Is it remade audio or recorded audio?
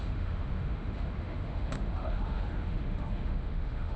remade